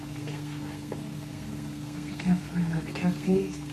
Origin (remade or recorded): remade